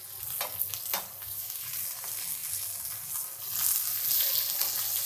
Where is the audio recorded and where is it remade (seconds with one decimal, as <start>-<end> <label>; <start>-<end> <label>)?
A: 0.0-1.2 recorded; 1.2-1.7 remade; 1.7-5.1 recorded